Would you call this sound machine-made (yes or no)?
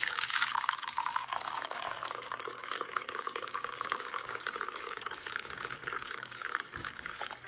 yes